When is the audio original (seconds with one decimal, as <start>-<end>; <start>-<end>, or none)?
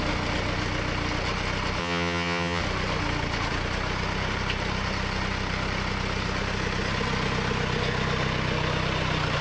0.0-1.8; 2.6-9.4